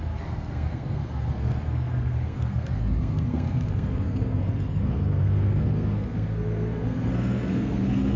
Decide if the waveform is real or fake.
fake